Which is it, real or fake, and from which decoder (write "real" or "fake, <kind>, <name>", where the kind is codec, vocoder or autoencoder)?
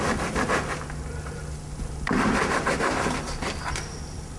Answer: real